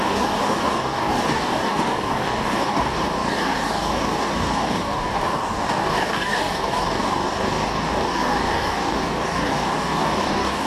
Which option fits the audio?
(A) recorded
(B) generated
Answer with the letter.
B